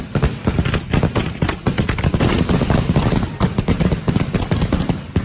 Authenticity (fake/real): real